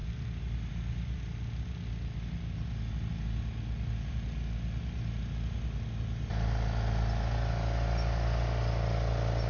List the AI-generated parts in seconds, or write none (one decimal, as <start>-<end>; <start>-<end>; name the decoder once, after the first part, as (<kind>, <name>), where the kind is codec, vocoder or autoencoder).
none